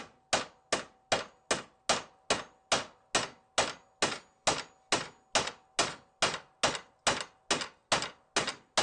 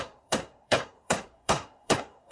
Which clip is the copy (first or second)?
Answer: second